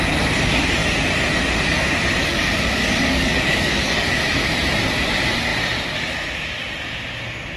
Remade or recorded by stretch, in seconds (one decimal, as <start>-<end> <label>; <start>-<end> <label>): 0.0-2.2 recorded; 2.2-4.2 remade; 4.2-7.6 recorded